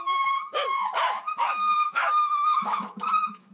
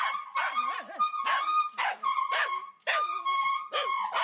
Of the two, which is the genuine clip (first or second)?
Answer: second